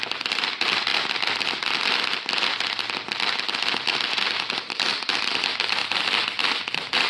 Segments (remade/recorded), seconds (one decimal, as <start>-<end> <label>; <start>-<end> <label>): 0.0-0.9 remade; 0.9-4.1 recorded; 4.1-5.8 remade; 5.8-6.5 recorded; 6.5-7.1 remade